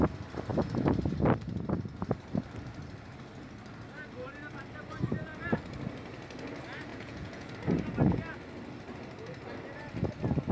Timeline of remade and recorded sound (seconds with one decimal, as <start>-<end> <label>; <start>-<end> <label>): 0.0-6.9 recorded; 6.9-7.5 remade; 7.5-10.5 recorded